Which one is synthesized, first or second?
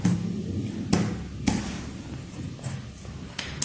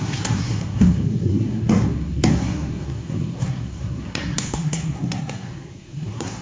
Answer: second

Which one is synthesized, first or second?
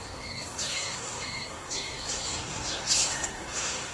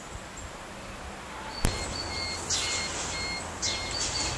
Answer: first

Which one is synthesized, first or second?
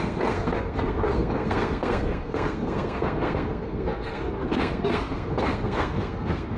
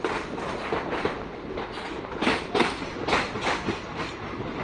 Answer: first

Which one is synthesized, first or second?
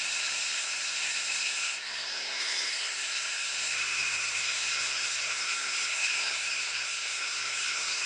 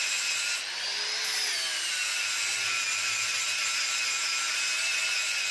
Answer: first